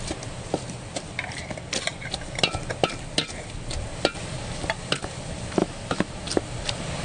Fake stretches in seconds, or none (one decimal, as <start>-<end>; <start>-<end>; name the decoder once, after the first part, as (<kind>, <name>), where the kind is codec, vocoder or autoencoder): 5.6-6.1 (autoencoder, DAC-VAE)